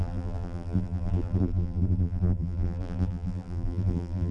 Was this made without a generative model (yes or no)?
no